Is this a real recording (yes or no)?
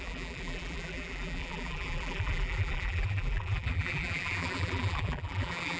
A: no